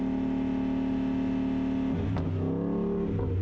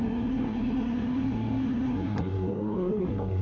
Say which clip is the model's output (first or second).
second